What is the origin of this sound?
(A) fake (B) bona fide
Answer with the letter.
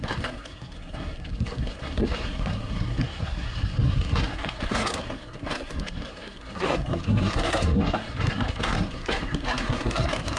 A